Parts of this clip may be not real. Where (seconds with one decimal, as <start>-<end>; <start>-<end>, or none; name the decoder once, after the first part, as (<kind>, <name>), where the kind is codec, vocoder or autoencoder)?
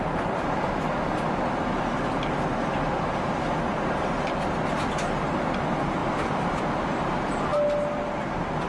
6.0-6.6 (vocoder, BigVGAN v2)